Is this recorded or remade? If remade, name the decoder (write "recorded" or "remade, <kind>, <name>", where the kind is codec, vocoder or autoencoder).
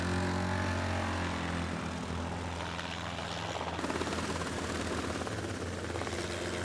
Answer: recorded